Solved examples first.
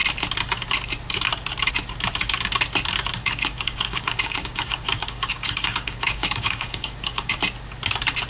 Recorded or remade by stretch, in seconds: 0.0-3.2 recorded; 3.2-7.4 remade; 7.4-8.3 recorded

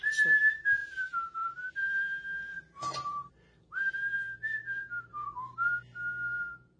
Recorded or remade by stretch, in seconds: 0.0-2.5 recorded; 2.5-3.3 remade; 3.3-6.8 recorded

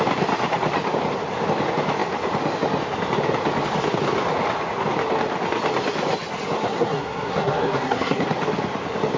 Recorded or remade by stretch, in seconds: 0.0-6.6 recorded; 6.6-8.2 remade; 8.2-9.2 recorded

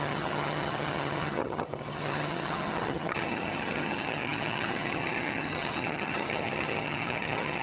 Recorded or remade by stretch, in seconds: 0.0-7.6 remade